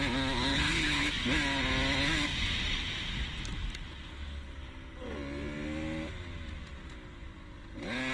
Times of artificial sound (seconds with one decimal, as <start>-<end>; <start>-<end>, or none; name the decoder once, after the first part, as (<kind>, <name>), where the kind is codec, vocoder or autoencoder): 0.5-1.1 (codec, HILCodec)